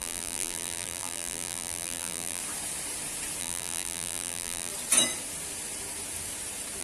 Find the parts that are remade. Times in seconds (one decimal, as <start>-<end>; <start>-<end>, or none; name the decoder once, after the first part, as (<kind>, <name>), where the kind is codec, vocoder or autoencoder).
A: 0.0-2.4 (vocoder, BigVGAN v2); 3.4-4.7